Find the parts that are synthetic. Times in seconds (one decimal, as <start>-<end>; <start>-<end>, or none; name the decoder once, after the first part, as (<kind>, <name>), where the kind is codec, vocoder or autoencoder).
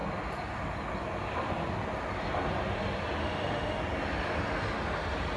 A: 3.2-3.8 (autoencoder, DAC-VAE)